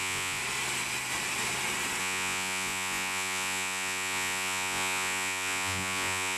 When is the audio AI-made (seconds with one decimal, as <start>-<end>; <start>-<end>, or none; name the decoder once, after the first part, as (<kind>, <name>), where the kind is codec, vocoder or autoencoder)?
0.0-0.4 (vocoder, Vocos); 2.0-6.4